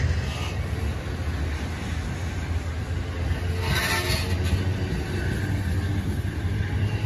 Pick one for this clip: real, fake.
real